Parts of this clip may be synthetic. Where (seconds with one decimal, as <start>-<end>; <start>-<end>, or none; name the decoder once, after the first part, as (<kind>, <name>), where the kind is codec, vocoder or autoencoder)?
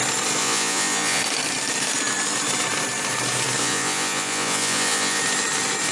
0.4-1.2 (vocoder, Vocos); 3.6-5.2